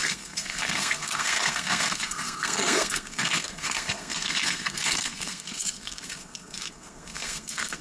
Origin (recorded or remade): remade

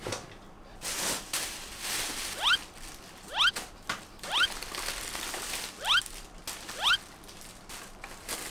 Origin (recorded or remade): recorded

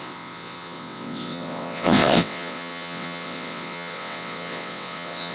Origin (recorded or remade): remade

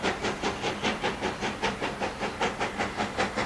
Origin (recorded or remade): recorded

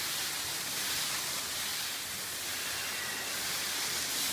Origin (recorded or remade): recorded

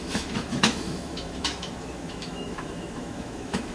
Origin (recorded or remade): remade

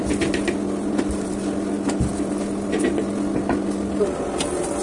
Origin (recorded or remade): recorded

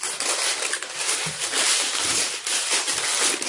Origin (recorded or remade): recorded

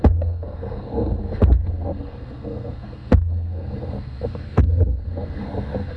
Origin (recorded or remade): remade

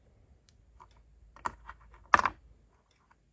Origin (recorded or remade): recorded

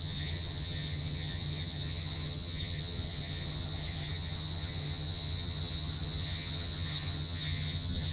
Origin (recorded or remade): remade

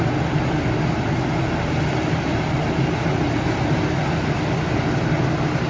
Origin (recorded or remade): recorded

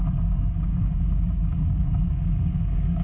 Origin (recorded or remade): remade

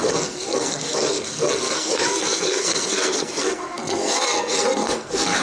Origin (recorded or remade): remade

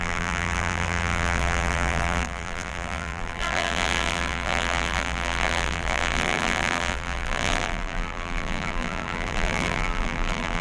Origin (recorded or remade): remade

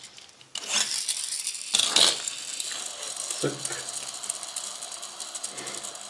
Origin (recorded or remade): recorded